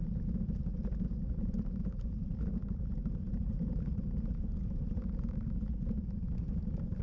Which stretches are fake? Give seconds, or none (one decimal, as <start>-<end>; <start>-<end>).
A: 1.3-7.0